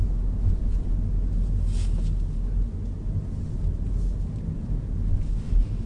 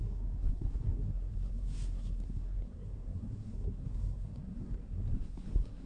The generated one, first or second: second